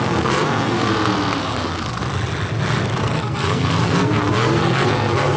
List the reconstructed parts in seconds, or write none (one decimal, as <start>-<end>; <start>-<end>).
0.0-0.9; 1.4-2.0; 3.0-5.4